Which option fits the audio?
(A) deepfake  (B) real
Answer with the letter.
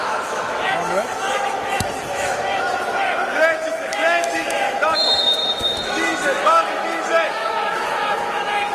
A